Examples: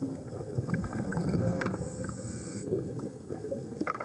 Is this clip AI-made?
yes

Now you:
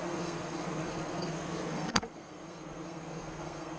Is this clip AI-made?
yes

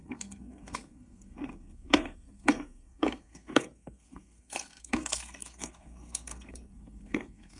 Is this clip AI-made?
yes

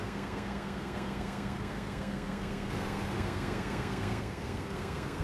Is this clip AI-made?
yes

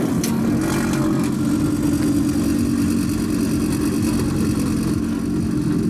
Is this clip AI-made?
no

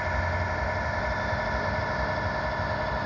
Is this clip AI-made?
no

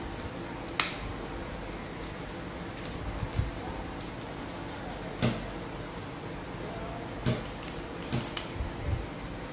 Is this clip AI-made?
no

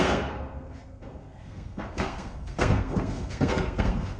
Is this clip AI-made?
yes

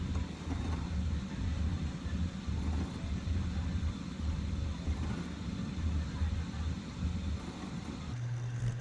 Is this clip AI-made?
no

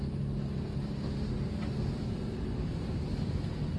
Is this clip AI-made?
no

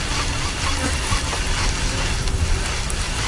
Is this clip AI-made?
no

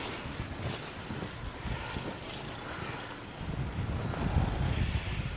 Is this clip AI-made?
no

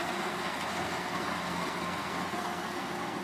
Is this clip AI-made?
yes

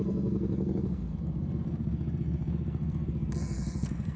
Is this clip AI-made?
yes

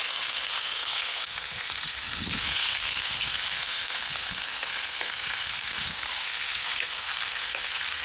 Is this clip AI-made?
yes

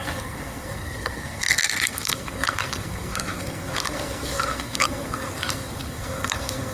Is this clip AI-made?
yes